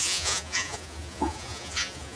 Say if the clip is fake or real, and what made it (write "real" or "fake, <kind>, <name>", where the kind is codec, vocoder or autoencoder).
fake, vocoder, Vocos